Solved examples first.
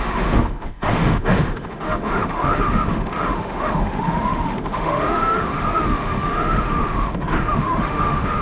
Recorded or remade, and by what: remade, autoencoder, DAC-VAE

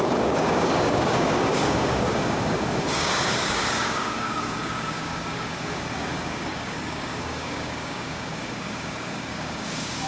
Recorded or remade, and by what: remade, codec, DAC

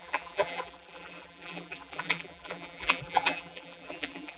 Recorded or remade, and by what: remade, vocoder, BigVGAN v2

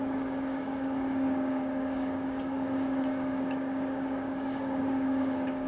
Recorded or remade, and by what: remade, codec, DAC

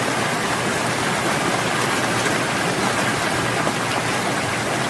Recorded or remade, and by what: recorded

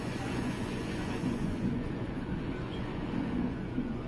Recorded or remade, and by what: remade, vocoder, Vocos